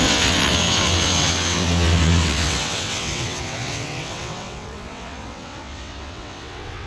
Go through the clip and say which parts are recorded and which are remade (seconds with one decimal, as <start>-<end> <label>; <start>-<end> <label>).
0.0-6.9 remade